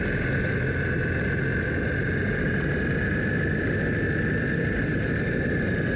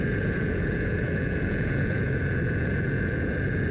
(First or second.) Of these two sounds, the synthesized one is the second